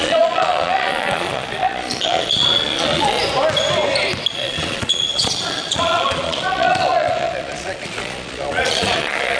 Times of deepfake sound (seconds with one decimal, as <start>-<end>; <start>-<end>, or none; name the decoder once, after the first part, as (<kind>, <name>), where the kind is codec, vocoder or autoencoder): 0.0-3.2 (vocoder, Vocos); 4.3-9.4